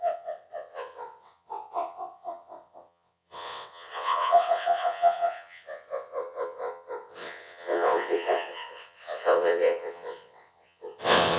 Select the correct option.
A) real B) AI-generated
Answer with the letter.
B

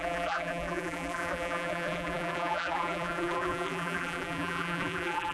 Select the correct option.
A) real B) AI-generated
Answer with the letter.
B